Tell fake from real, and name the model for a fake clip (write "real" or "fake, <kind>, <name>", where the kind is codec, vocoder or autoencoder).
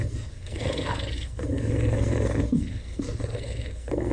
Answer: fake, codec, SNAC